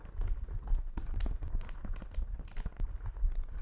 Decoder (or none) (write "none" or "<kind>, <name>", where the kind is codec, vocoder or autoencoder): none